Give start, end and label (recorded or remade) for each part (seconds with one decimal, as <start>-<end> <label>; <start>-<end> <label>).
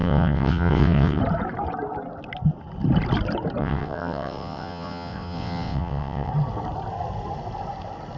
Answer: 0.0-1.2 remade; 1.2-3.6 recorded; 3.6-6.3 remade; 6.3-8.2 recorded